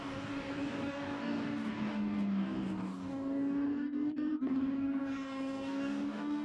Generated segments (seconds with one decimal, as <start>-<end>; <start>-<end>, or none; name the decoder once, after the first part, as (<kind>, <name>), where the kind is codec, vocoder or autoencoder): 0.0-6.4 (codec, DAC)